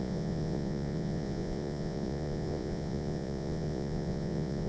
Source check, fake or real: fake